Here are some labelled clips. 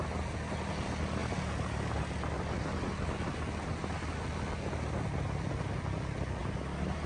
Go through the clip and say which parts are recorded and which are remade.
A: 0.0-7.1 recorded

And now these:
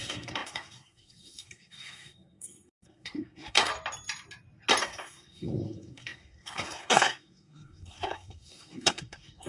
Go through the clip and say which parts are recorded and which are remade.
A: 0.0-3.7 remade; 3.7-4.8 recorded; 4.8-9.5 remade

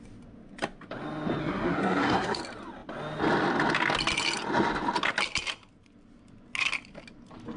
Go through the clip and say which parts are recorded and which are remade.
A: 0.0-1.4 recorded; 1.4-2.4 remade; 2.4-7.6 recorded